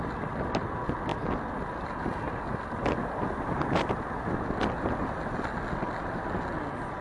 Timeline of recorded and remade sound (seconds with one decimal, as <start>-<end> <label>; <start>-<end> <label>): 0.0-7.0 recorded